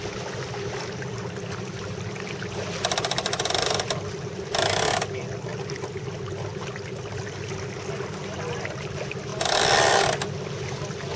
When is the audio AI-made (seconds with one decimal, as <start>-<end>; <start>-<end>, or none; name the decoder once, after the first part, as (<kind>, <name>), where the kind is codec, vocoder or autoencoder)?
none